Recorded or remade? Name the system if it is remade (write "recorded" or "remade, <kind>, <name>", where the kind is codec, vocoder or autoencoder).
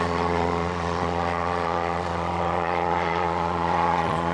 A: remade, vocoder, Vocos